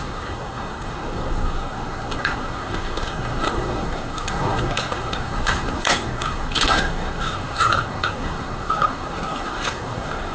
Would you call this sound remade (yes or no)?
yes